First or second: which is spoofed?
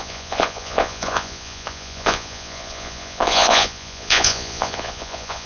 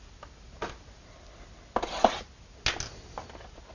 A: first